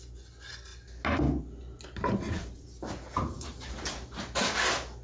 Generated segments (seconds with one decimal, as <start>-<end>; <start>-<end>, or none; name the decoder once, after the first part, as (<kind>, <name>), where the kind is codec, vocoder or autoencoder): none